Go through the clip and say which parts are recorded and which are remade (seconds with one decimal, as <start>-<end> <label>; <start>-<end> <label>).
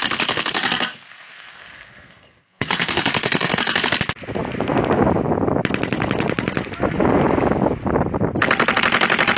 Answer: 0.0-3.8 remade; 3.8-9.4 recorded